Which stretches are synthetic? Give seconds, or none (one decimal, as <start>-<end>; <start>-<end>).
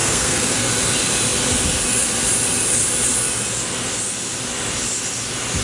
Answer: 0.0-0.7